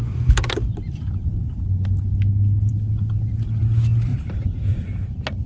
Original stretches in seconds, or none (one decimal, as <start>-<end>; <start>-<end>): 0.0-4.1; 5.0-5.5